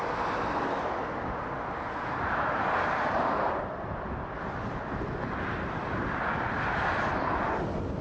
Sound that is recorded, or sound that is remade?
recorded